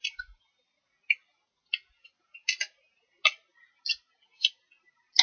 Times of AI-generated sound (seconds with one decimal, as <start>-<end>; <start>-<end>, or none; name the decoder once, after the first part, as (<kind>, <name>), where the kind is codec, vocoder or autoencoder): none